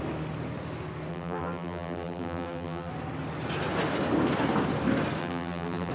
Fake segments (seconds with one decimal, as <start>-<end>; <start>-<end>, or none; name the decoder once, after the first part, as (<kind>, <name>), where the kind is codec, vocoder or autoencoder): 1.1-2.9 (vocoder, BigVGAN v2); 5.2-5.9

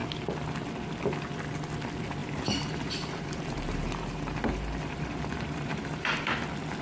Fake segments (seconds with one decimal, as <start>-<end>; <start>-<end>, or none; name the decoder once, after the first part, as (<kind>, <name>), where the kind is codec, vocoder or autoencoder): 2.2-6.3 (vocoder, BigVGAN v2)

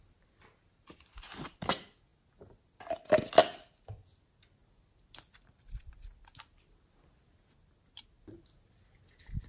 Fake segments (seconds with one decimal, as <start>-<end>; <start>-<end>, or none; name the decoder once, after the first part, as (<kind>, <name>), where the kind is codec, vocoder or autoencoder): none

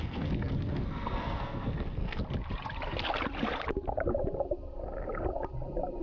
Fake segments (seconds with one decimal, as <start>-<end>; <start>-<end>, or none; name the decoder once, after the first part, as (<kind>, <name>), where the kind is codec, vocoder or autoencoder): 0.0-2.2 (codec, SNAC)

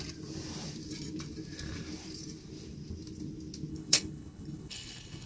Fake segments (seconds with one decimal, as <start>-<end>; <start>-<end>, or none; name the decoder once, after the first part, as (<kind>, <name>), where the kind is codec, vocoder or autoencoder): 3.7-5.3 (codec, HILCodec)

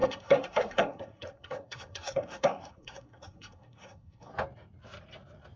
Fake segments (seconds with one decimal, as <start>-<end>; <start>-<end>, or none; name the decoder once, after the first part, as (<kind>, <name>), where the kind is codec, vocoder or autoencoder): 0.0-4.3 (codec, SNAC)